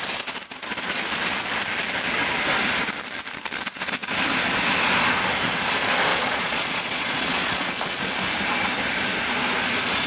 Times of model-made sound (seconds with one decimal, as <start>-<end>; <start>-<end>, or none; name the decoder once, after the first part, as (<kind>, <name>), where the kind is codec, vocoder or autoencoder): 6.1-7.7 (vocoder, Vocos)